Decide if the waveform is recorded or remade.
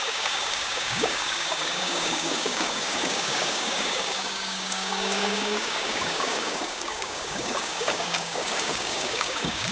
remade